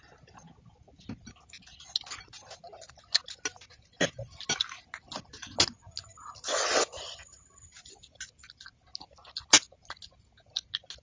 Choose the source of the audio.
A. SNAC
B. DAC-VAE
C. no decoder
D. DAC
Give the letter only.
C